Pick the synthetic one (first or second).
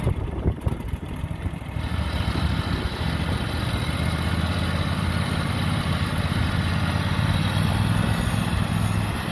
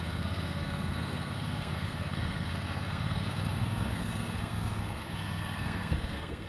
second